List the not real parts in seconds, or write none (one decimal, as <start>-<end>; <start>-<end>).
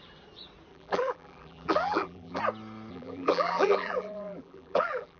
0.7-2.4; 2.9-5.2